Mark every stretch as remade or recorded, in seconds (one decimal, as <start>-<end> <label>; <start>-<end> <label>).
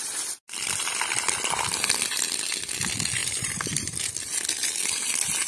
0.0-3.2 recorded; 3.2-4.1 remade; 4.1-5.5 recorded